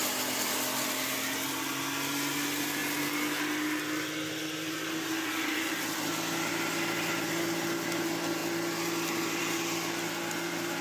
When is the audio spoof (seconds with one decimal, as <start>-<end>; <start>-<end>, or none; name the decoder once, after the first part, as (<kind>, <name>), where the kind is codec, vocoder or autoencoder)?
none